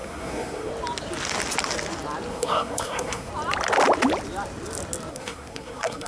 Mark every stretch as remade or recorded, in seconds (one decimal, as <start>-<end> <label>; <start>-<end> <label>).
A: 0.0-0.7 remade; 0.7-2.3 recorded; 2.3-3.3 remade; 3.3-5.1 recorded; 5.1-6.1 remade